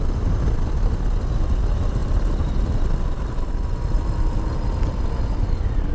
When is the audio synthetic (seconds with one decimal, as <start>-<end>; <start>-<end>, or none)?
none